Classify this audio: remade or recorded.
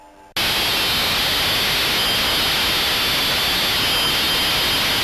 recorded